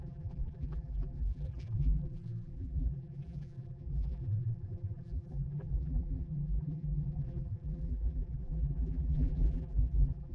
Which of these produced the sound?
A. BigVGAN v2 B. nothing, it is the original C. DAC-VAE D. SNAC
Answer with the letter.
A